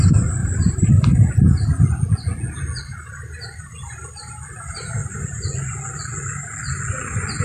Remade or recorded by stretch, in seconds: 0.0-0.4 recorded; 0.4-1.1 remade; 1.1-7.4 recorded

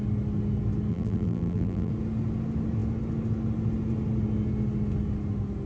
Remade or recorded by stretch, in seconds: 0.0-0.9 recorded; 0.9-1.9 remade; 1.9-5.7 recorded